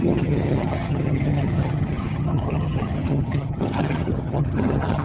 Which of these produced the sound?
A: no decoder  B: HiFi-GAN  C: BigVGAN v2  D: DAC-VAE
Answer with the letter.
B